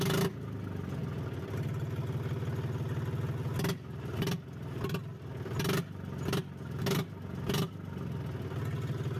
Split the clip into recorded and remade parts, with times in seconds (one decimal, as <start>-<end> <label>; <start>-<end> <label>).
0.0-9.2 recorded